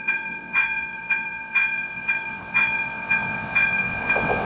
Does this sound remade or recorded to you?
remade